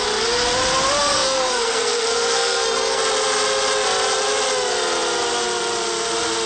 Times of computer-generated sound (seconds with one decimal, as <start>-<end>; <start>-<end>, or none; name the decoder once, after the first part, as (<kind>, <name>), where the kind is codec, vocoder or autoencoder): 1.0-3.0 (codec, SNAC)